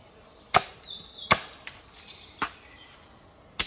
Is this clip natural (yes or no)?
yes